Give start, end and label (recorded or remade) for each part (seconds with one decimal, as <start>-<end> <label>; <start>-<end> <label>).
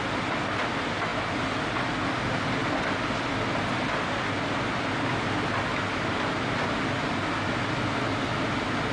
0.0-8.9 recorded